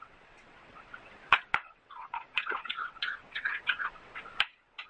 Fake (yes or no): yes